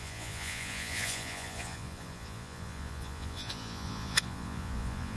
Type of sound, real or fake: fake